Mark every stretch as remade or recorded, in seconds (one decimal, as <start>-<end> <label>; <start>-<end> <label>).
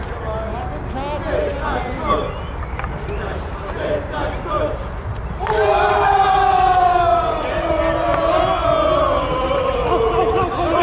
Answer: 0.0-7.1 recorded; 7.1-7.7 remade; 7.7-10.8 recorded